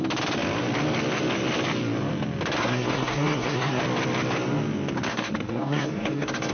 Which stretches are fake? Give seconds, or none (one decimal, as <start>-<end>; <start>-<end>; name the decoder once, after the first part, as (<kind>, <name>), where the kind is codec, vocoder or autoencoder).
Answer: 2.6-3.8 (codec, SNAC); 5.1-6.5